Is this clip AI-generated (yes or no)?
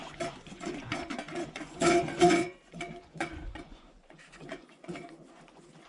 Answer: yes